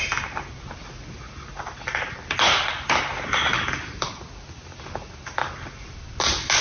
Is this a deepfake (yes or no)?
no